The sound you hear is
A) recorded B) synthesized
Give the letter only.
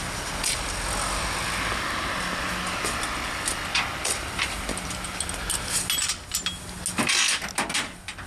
A